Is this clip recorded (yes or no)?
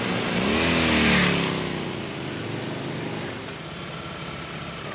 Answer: yes